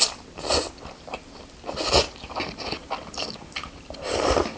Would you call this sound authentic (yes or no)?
yes